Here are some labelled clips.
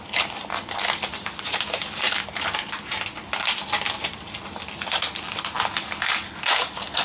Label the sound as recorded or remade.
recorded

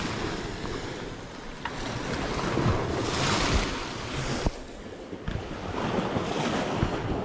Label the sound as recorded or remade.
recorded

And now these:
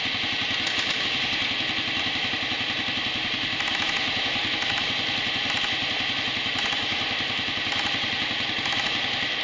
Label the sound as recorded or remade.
recorded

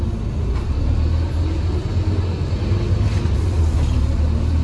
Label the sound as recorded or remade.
recorded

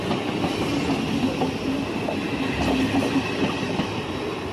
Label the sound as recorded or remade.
recorded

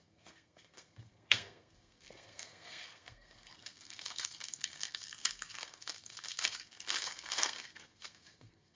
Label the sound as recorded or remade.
remade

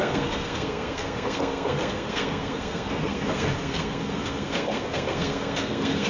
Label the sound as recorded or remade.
remade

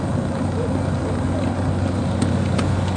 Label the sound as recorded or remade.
recorded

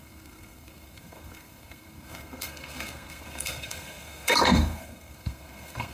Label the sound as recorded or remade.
remade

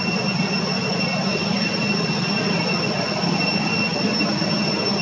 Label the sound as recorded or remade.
recorded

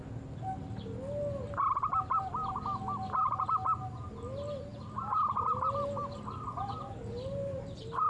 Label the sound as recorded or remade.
recorded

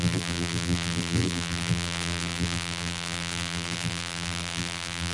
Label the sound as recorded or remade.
remade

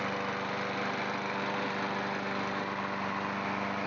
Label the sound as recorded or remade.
recorded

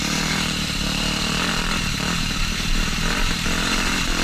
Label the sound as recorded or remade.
remade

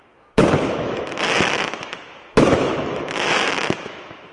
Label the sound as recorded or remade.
remade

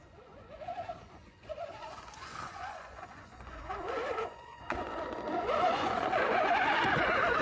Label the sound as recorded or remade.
remade